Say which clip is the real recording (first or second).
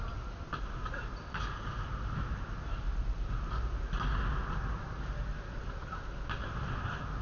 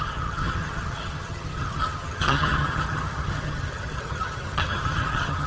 first